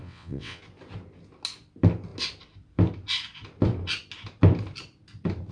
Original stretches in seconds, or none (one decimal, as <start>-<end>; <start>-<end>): 0.6-5.5